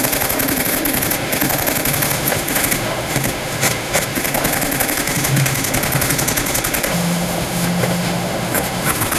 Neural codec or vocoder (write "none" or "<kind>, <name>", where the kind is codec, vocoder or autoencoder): autoencoder, DAC-VAE